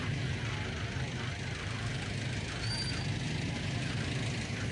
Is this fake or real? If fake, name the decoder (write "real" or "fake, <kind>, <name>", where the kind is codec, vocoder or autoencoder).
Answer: real